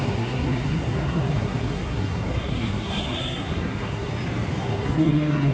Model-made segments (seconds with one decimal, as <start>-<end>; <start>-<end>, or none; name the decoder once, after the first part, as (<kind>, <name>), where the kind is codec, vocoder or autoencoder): 0.0-4.1 (codec, SNAC); 4.6-5.5